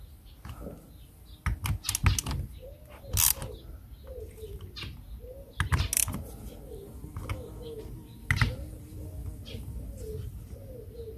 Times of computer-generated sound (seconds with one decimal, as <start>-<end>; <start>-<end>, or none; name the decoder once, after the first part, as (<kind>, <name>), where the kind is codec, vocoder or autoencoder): none